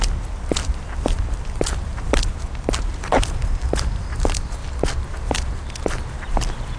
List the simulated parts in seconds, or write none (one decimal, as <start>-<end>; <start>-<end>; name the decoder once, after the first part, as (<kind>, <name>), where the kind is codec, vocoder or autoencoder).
0.0-2.3 (vocoder, BigVGAN v2); 3.0-4.6; 5.2-6.8